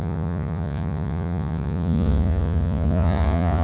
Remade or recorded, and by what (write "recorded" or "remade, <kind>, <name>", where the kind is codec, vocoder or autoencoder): remade, vocoder, Vocos